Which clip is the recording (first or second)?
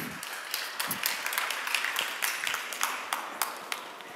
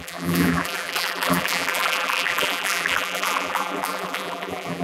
first